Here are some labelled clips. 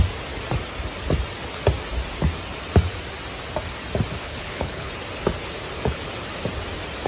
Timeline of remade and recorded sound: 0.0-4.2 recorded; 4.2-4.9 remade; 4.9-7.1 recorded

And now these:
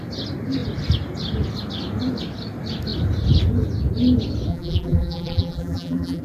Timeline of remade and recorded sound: 0.0-4.5 recorded; 4.5-6.2 remade

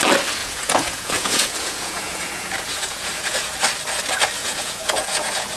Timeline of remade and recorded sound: 0.0-0.4 recorded; 0.4-3.5 remade; 3.5-4.4 recorded; 4.4-5.6 remade

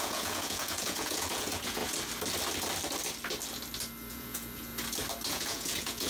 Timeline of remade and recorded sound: 0.0-1.8 remade; 1.8-4.1 recorded; 4.1-4.7 remade; 4.7-5.3 recorded; 5.3-6.1 remade

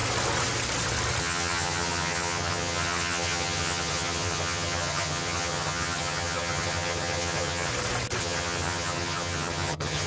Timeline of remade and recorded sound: 0.0-1.2 recorded; 1.2-7.7 remade; 7.7-8.2 recorded; 8.2-10.1 remade

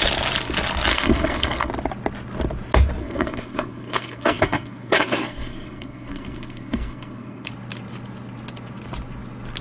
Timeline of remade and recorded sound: 0.0-0.9 recorded; 0.9-1.7 remade; 1.7-3.0 recorded; 3.0-7.5 remade; 7.5-9.6 recorded

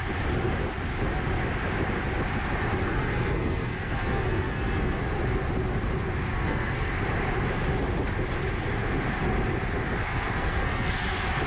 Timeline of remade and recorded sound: 0.0-2.8 recorded; 2.8-5.0 remade; 5.0-6.3 recorded; 6.3-6.9 remade; 6.9-10.1 recorded; 10.1-10.9 remade; 10.9-11.5 recorded